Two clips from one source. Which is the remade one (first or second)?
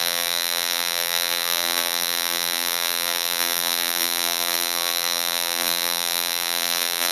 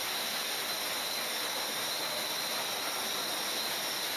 first